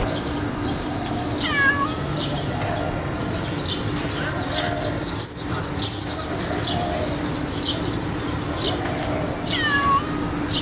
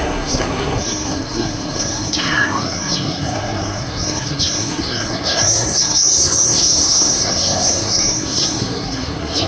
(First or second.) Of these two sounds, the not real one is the second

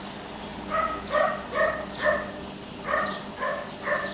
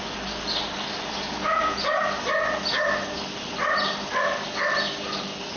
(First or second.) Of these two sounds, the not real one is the first